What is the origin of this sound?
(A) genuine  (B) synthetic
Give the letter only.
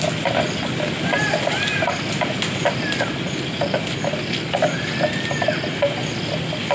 A